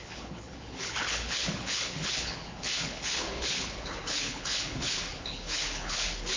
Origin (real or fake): fake